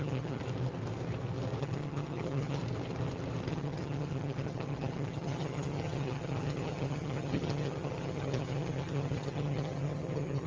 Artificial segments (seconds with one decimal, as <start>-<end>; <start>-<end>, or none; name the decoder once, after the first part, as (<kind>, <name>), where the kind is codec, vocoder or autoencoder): 0.0-0.4 (vocoder, HiFi-GAN); 1.6-2.6; 3.5-10.5